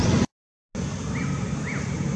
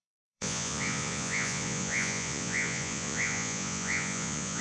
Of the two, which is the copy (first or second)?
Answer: second